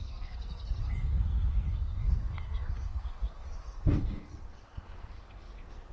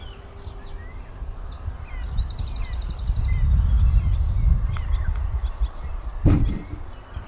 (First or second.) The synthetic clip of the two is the first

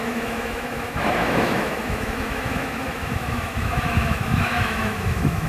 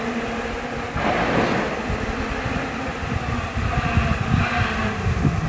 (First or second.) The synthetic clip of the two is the first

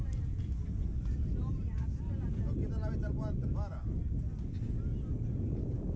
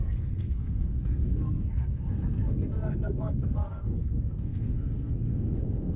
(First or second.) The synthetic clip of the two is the second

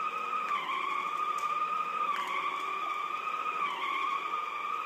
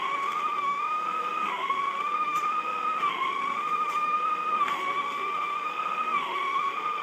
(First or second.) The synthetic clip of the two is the second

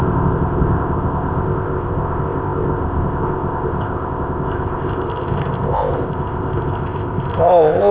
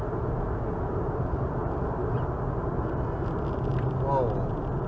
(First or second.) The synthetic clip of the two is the first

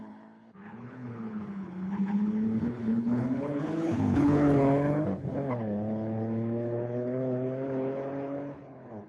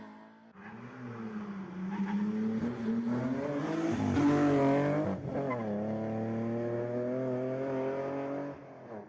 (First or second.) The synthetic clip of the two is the first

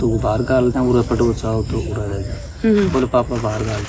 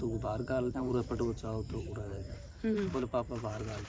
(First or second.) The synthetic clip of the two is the second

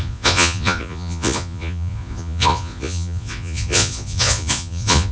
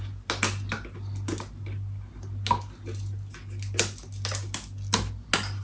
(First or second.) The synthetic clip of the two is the first